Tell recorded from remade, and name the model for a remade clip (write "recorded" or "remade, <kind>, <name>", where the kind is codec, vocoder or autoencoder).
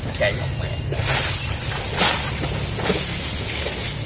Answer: recorded